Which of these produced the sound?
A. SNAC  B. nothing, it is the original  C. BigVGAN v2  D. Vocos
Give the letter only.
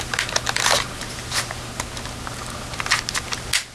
B